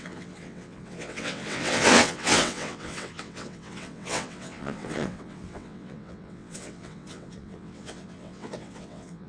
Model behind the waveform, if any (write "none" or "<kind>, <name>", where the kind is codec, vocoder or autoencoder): vocoder, WaveNeXt